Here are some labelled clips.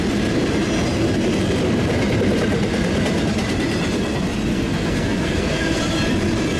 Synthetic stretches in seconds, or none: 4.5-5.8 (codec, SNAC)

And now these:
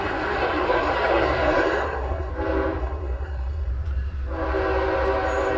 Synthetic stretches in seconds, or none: 0.0-2.3 (codec, SNAC); 2.8-3.7

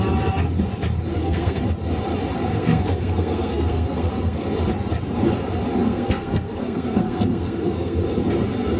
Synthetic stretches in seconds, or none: 1.1-1.6 (codec, SNAC); 2.5-4.5; 5.8-8.0

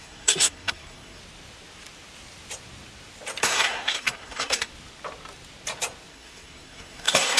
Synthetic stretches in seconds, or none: 0.0-1.2 (codec, SNAC); 3.4-4.7; 6.1-7.4

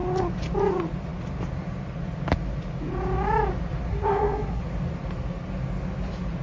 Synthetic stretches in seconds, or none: 3.9-4.6 (codec, SNAC)